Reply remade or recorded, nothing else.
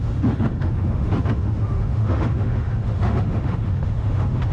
remade